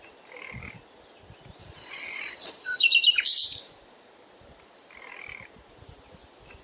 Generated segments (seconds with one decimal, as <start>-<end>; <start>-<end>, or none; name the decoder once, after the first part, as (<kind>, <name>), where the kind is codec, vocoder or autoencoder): 1.6-2.8 (vocoder, Vocos)